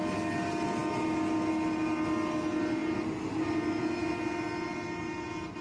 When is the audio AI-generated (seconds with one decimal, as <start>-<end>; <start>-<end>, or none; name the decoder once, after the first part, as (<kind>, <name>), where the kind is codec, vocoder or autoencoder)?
none